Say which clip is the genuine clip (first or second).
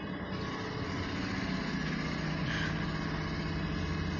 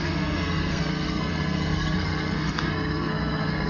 first